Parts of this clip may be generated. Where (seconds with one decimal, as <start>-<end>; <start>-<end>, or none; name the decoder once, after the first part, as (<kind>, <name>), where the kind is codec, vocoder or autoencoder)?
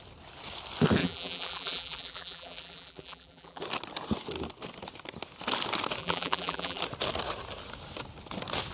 1.0-3.6 (vocoder, BigVGAN v2); 6.0-6.8